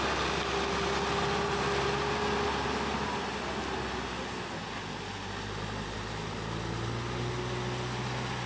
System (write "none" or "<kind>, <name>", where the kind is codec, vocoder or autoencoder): none